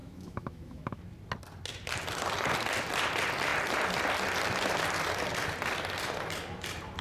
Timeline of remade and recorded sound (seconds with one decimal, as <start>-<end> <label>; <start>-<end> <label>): 0.0-1.0 remade; 1.0-7.0 recorded